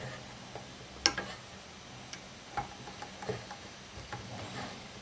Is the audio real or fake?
real